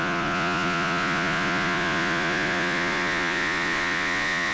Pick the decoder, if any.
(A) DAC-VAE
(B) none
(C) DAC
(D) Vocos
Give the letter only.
D